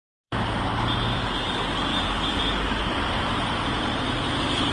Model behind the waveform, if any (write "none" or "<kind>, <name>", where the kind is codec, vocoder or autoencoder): vocoder, BigVGAN v2